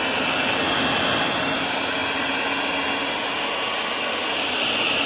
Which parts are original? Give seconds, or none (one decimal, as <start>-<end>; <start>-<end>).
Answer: 0.0-5.1